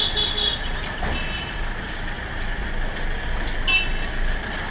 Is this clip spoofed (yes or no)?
no